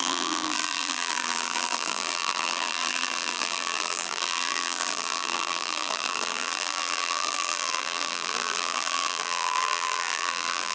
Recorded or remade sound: remade